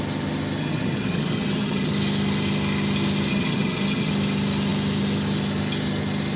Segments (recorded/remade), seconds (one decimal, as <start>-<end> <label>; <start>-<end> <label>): 0.0-0.6 recorded; 0.6-1.9 remade; 1.9-3.3 recorded; 3.3-4.1 remade; 4.1-6.4 recorded